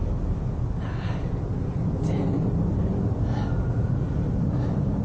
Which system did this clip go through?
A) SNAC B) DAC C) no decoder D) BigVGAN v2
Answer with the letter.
C